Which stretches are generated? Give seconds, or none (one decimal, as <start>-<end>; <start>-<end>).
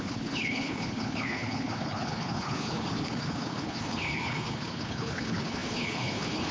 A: 0.0-6.5